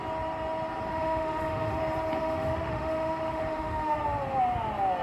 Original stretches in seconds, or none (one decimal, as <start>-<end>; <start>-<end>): 0.0-0.9; 1.8-2.2; 4.0-5.0